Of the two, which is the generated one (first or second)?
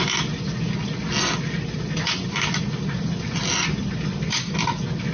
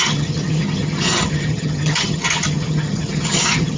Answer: second